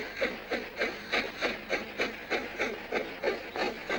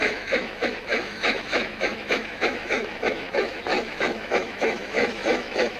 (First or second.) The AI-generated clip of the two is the second